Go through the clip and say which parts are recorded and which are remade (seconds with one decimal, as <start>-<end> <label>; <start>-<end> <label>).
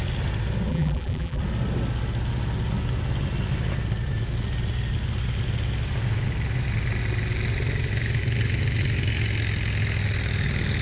0.0-0.7 recorded; 0.7-1.4 remade; 1.4-10.8 recorded